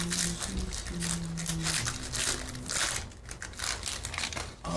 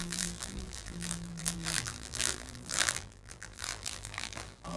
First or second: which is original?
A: first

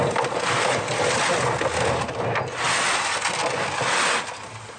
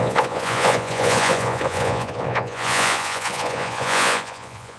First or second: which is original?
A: first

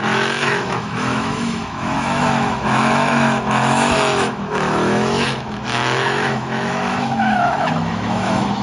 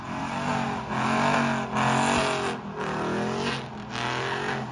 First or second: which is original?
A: second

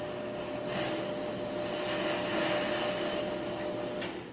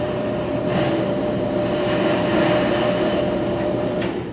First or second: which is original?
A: first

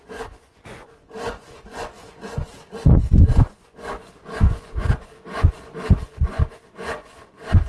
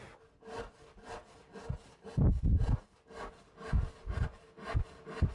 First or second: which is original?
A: second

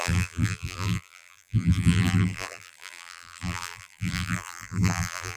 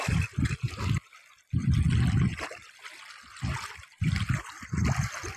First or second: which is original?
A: second